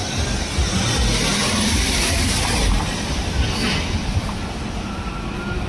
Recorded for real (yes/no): yes